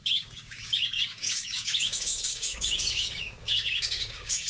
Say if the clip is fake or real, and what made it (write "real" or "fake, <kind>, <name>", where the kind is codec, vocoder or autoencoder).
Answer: fake, codec, DAC